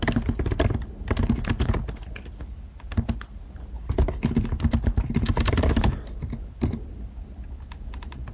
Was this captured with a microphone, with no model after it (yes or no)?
yes